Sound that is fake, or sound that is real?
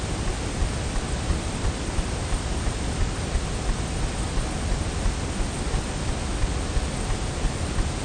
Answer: real